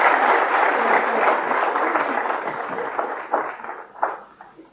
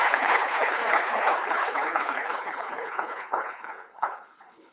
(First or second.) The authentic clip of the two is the first